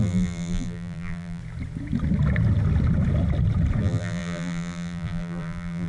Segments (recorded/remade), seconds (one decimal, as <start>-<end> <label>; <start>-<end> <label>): 0.0-1.4 remade; 1.4-3.8 recorded; 3.8-5.9 remade

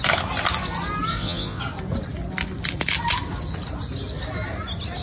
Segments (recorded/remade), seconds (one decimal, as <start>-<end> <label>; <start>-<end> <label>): 0.0-1.1 recorded; 1.1-1.6 remade; 1.6-5.0 recorded